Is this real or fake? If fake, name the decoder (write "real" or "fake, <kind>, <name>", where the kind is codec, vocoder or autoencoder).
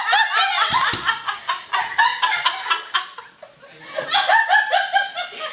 real